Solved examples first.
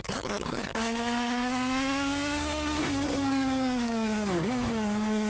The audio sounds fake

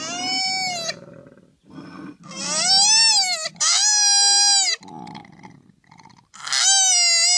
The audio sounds real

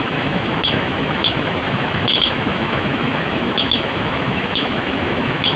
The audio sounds fake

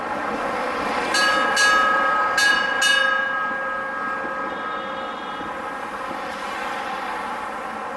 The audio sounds real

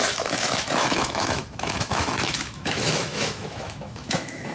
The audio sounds fake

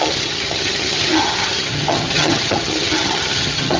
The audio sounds fake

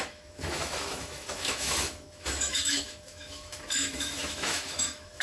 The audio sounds fake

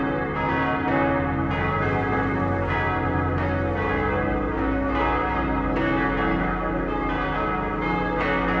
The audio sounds real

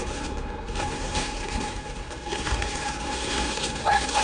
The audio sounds fake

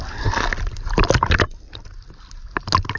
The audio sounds real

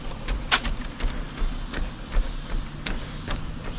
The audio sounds real